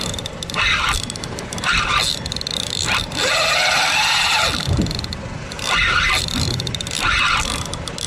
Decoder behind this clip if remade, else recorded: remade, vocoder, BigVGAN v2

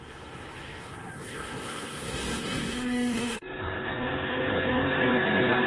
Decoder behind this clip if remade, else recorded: remade, codec, SNAC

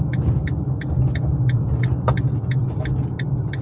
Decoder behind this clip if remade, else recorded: recorded